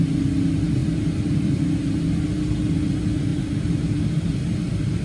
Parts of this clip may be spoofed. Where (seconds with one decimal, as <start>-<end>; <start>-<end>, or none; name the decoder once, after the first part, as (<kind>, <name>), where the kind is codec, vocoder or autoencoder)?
0.8-1.8 (vocoder, BigVGAN v2); 3.3-4.0